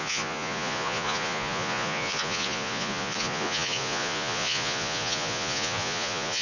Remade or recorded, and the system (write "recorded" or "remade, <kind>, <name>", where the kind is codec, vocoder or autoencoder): remade, vocoder, Vocos